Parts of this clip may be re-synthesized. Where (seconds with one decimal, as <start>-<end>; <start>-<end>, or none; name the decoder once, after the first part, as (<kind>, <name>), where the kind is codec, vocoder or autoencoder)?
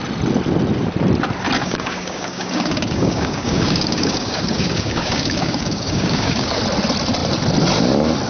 1.6-6.6 (codec, DAC)